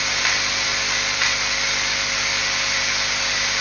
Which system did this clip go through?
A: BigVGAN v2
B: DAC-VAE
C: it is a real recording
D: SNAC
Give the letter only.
C